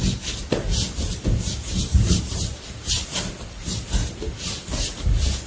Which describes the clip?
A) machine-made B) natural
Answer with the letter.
B